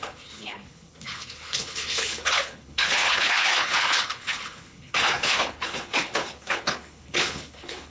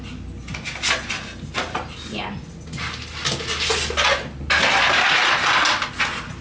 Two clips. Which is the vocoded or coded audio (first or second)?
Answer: first